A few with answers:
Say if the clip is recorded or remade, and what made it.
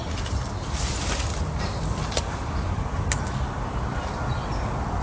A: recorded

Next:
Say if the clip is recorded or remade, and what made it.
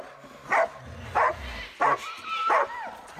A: recorded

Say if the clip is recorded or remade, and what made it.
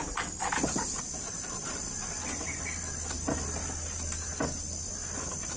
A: recorded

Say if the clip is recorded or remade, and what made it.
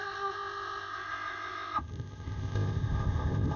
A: remade, codec, ZipCodec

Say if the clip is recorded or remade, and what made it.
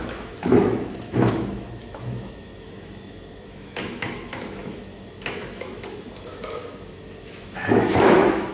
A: remade, autoencoder, DAC-VAE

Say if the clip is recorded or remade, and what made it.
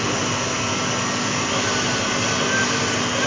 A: recorded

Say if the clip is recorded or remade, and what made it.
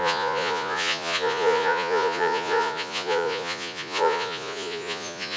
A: remade, vocoder, Vocos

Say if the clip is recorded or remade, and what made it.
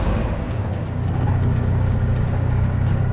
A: remade, codec, DAC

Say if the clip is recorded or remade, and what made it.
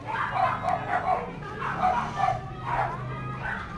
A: recorded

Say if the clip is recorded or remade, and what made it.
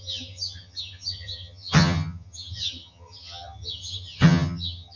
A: remade, vocoder, HiFi-GAN